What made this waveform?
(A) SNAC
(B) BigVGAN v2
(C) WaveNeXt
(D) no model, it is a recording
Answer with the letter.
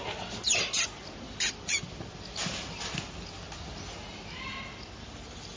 D